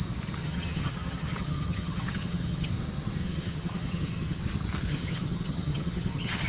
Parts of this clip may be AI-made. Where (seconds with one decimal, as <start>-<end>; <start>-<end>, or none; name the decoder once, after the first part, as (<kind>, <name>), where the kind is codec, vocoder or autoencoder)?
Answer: 0.4-2.7 (vocoder, HiFi-GAN); 3.2-4.4; 4.9-6.5